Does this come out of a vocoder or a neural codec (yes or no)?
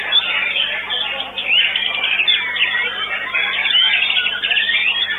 no